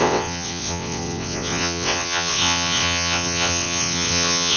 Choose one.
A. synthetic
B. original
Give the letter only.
A